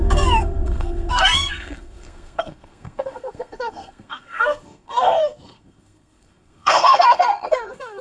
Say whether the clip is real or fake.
fake